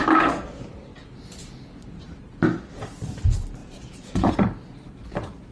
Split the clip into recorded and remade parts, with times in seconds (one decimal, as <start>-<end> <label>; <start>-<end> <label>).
0.0-3.6 recorded; 3.6-4.3 remade; 4.3-5.5 recorded